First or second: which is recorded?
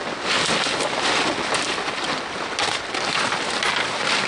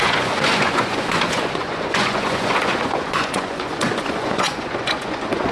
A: first